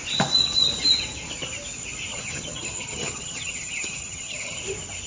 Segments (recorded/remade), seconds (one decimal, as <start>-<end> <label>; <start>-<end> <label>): 0.0-2.1 recorded; 2.1-4.6 remade; 4.6-5.1 recorded